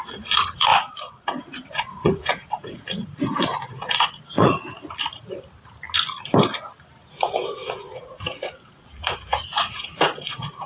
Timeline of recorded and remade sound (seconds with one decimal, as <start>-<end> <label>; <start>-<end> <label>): 0.0-4.8 remade; 4.8-7.1 recorded; 7.1-10.7 remade